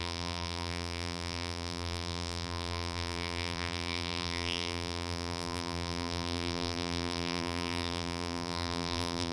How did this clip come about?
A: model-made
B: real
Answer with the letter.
A